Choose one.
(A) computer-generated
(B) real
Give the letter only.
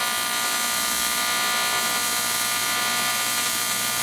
B